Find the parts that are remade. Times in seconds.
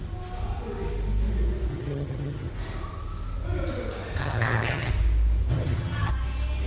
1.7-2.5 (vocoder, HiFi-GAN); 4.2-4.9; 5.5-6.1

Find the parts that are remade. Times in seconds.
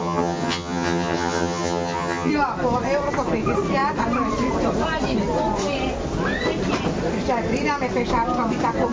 0.0-2.3 (vocoder, HiFi-GAN)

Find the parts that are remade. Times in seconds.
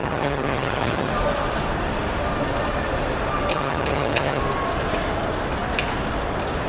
0.0-1.1 (vocoder, HiFi-GAN); 3.5-4.4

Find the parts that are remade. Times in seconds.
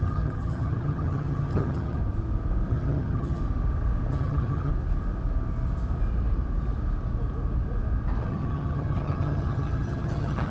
0.0-2.0 (vocoder, HiFi-GAN); 2.7-3.4; 4.1-4.7; 8.2-10.5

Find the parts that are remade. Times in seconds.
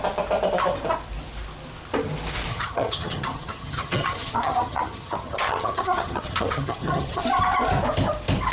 2.5-7.2 (vocoder, HiFi-GAN)